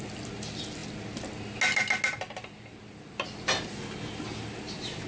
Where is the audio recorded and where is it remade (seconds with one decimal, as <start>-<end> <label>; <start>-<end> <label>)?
0.0-5.1 recorded